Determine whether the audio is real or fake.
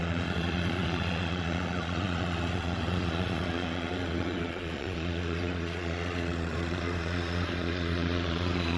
fake